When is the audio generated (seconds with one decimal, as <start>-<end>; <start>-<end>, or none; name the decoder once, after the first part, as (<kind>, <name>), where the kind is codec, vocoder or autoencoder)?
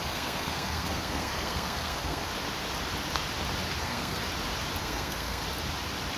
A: 0.0-2.3 (codec, SNAC); 3.8-4.2; 4.8-5.4